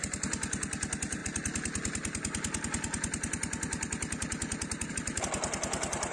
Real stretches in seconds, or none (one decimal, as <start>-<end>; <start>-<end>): 0.0-6.1